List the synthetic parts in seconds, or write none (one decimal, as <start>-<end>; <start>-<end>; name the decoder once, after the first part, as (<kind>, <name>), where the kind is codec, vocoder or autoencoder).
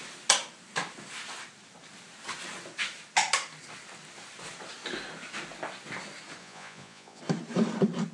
6.4-7.2 (vocoder, Vocos)